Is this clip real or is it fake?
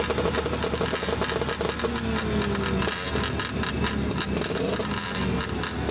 real